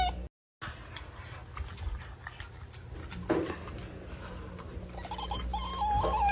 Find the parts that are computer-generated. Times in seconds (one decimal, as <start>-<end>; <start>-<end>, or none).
none